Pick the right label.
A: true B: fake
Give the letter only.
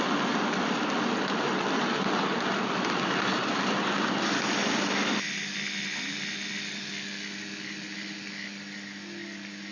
A